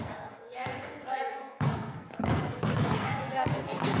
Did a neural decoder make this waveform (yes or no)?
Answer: yes